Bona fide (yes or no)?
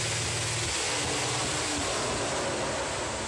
yes